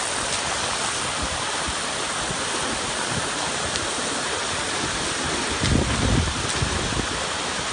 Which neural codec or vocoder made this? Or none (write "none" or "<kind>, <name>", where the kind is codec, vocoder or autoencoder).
none